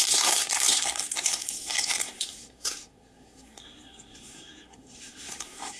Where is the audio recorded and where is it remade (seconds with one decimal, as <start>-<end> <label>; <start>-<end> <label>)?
0.0-5.8 remade